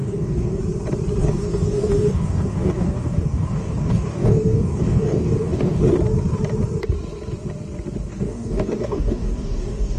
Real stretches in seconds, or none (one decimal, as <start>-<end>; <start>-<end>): 0.6-1.2; 5.9-8.1